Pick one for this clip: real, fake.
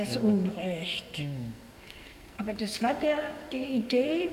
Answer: fake